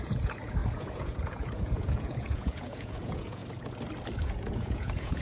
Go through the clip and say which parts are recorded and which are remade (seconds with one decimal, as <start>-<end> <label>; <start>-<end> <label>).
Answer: 0.0-3.4 remade; 3.4-4.2 recorded; 4.2-5.2 remade